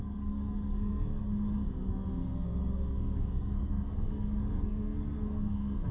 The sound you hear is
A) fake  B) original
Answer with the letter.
A